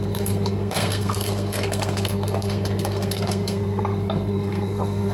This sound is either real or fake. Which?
fake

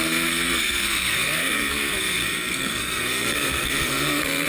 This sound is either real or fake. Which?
fake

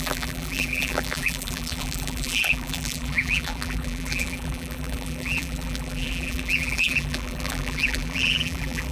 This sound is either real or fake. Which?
fake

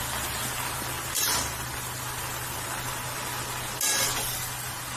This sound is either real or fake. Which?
real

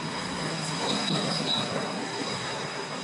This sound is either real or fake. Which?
fake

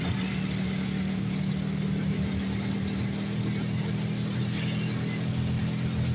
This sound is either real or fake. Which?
real